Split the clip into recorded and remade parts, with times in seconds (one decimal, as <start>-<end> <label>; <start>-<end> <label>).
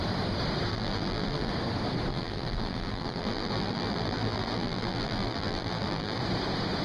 0.0-0.7 recorded; 0.7-1.5 remade; 1.5-2.1 recorded; 2.1-6.2 remade; 6.2-6.8 recorded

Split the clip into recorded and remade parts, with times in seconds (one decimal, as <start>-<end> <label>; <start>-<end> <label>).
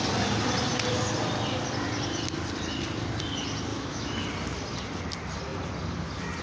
0.0-3.7 recorded; 3.7-4.2 remade; 4.2-6.4 recorded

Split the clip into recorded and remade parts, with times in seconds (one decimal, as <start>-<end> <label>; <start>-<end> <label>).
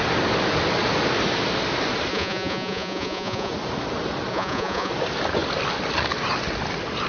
0.0-2.1 recorded; 2.1-3.5 remade; 3.5-4.3 recorded; 4.3-4.9 remade; 4.9-7.1 recorded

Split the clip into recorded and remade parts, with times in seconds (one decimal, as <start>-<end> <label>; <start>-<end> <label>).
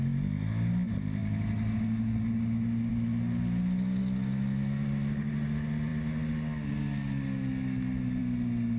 0.0-8.8 recorded